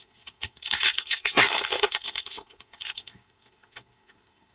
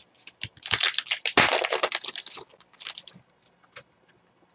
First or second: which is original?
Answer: second